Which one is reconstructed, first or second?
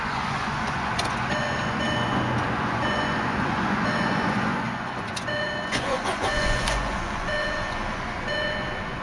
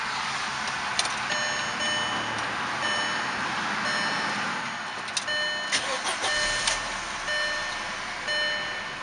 first